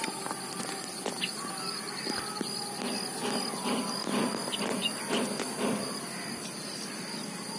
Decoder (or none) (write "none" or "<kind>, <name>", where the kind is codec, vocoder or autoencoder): none